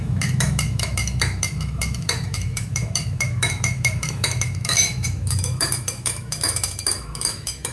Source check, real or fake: fake